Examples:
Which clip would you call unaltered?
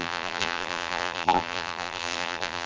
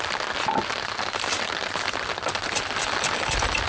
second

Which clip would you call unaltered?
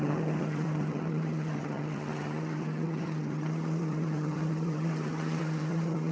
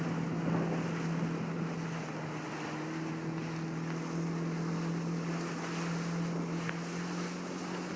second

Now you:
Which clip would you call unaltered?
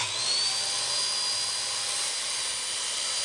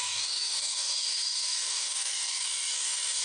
first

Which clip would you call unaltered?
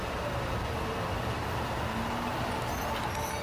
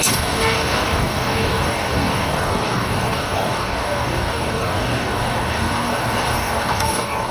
first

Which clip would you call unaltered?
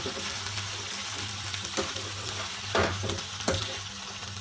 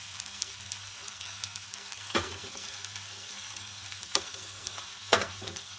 first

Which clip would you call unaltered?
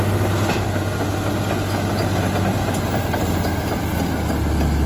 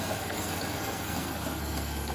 first